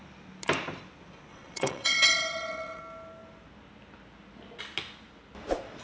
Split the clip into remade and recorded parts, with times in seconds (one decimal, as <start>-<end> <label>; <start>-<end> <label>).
0.0-1.3 recorded; 1.3-2.8 remade; 2.8-5.8 recorded